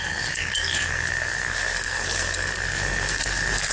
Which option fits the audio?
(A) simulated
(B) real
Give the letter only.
A